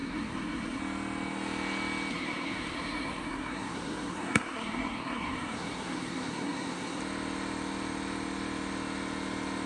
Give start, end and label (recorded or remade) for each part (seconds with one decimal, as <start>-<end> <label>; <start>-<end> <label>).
0.0-0.8 remade; 0.8-2.1 recorded; 2.1-7.0 remade; 7.0-9.7 recorded